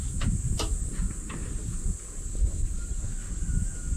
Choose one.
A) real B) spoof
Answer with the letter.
A